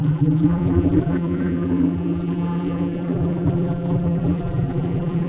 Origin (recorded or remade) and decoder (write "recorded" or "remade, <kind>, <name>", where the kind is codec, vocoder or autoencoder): remade, vocoder, BigVGAN v2